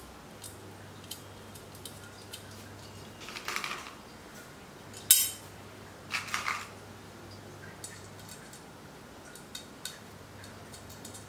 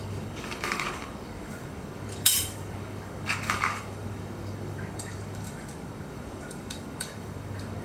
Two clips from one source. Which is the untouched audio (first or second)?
first